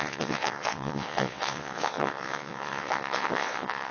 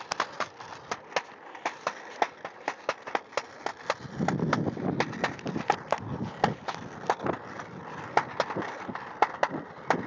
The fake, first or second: first